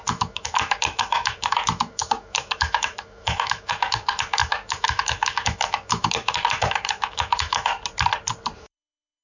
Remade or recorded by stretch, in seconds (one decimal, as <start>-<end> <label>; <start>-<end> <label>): 0.0-7.7 remade; 7.7-8.6 recorded; 8.6-9.2 remade